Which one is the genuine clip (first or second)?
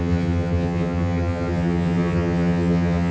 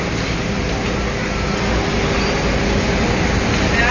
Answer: second